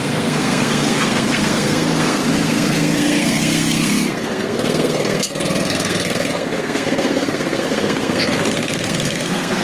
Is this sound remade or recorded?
remade